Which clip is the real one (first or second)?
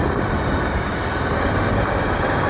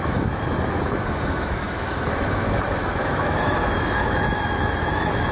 first